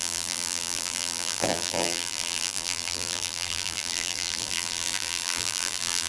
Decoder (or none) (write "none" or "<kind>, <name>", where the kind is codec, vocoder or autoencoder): vocoder, BigVGAN v2